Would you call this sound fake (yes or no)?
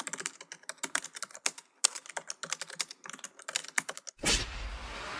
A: no